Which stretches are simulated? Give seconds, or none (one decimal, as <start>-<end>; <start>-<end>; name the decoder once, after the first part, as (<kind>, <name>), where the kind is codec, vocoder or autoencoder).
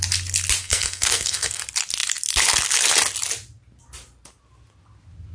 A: 0.6-1.6 (codec, SNAC)